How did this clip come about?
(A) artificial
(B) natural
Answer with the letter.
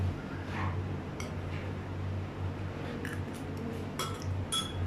B